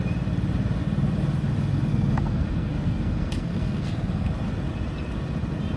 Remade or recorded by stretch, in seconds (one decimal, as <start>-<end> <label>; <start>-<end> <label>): 0.0-1.9 recorded; 1.9-4.3 remade; 4.3-5.8 recorded